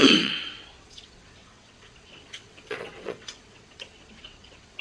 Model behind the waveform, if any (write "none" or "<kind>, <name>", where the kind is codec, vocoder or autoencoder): vocoder, WaveNeXt